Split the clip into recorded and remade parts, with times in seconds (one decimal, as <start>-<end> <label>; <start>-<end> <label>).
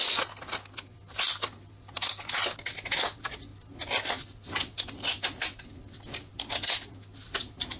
0.0-7.8 recorded